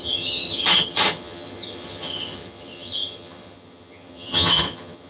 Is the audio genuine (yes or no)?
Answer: no